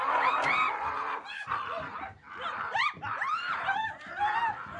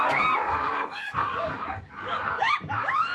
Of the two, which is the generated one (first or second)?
second